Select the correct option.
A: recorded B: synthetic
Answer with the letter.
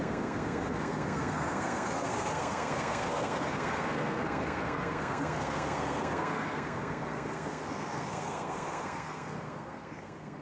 B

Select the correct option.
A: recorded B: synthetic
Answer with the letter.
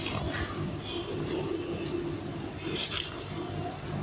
A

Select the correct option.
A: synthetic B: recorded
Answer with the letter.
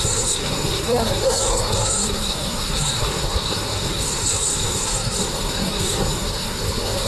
A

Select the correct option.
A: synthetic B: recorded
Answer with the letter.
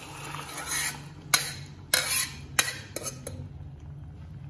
B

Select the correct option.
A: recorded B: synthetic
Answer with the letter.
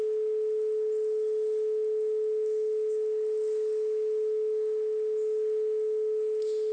A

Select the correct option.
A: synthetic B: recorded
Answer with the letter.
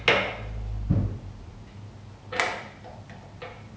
B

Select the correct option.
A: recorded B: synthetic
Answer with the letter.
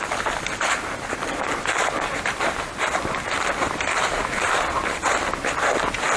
B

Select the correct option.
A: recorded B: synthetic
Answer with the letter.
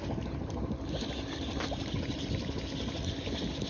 A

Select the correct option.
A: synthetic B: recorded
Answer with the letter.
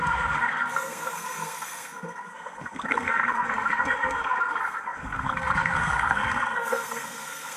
A